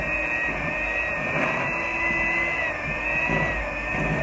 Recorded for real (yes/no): yes